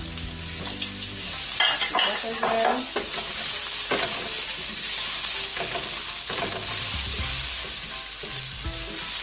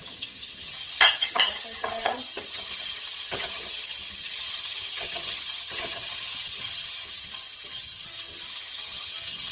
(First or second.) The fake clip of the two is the second